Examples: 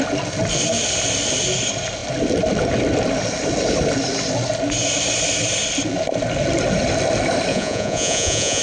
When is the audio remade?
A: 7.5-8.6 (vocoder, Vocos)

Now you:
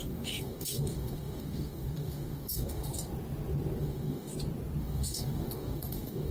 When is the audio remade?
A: 0.0-3.1 (codec, DAC); 3.8-4.3; 4.8-6.3

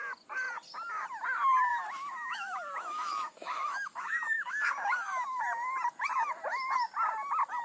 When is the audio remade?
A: 1.7-5.4 (autoencoder, DAC-VAE)

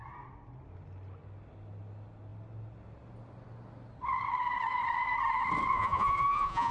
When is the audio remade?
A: 5.7-6.7 (vocoder, Vocos)

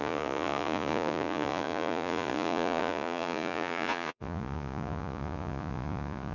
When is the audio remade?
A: 0.0-6.3 (vocoder, Vocos)

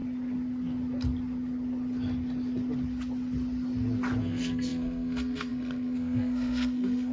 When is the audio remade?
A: 4.2-7.1 (codec, SNAC)